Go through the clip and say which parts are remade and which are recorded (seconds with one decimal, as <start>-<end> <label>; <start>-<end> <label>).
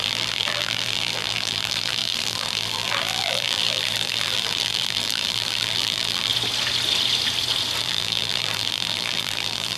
0.0-6.3 remade; 6.3-7.8 recorded; 7.8-9.8 remade